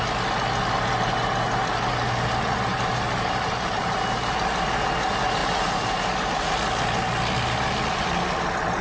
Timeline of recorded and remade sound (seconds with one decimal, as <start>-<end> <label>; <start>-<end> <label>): 0.0-2.7 recorded; 2.7-4.0 remade; 4.0-5.4 recorded; 5.4-6.5 remade; 6.5-8.8 recorded